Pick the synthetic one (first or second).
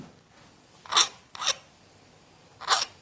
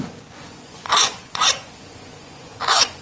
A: second